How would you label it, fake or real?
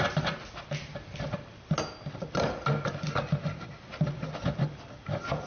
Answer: real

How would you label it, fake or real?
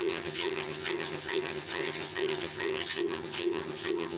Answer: fake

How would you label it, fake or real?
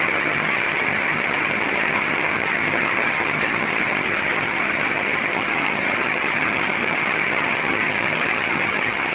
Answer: fake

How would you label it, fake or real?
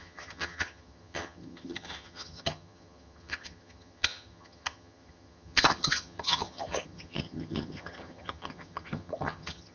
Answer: fake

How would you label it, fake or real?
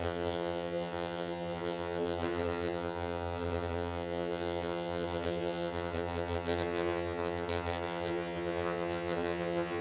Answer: fake